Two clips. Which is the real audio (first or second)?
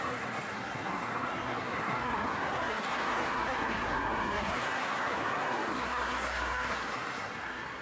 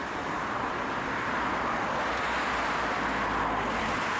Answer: second